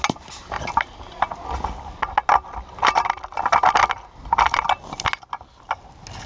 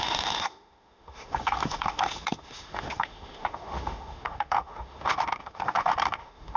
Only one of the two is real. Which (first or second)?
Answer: first